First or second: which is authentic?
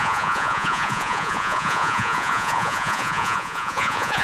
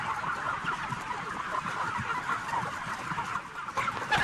second